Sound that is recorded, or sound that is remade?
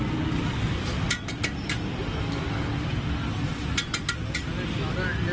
recorded